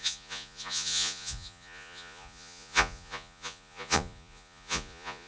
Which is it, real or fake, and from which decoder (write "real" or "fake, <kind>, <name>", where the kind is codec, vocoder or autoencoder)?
fake, vocoder, Vocos